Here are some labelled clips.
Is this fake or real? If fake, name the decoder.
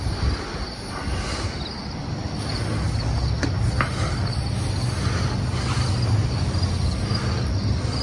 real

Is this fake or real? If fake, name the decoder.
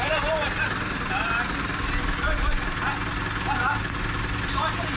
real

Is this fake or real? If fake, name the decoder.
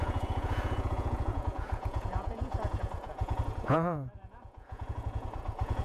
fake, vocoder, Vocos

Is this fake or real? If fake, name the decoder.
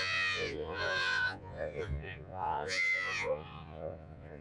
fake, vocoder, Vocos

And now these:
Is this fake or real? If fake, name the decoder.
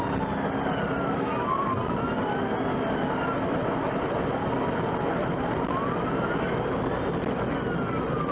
real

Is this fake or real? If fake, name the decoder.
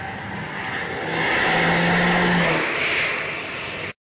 real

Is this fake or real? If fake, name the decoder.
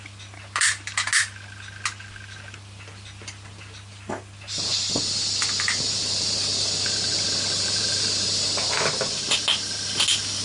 real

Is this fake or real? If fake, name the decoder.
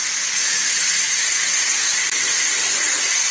real